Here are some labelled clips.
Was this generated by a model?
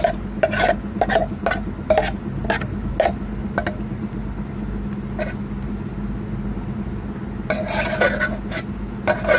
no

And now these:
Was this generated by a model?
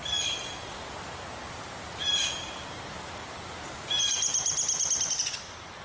no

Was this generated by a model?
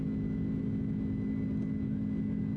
no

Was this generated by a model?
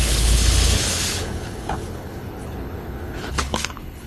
yes